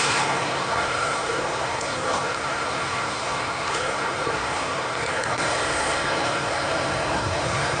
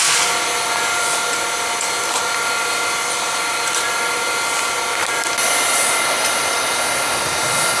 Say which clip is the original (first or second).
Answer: second